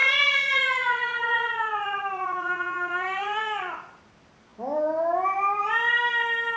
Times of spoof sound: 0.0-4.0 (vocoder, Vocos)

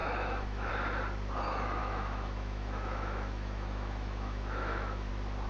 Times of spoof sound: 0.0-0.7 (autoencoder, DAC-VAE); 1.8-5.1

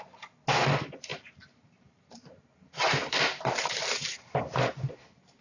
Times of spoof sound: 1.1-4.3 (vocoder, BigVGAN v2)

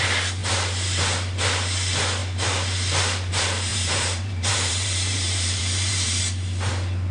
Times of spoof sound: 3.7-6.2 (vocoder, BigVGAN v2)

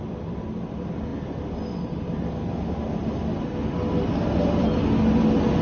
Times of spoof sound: none